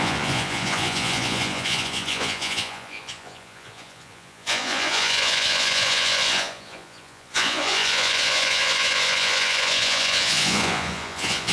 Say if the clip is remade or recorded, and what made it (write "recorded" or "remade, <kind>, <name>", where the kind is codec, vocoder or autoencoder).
remade, vocoder, Vocos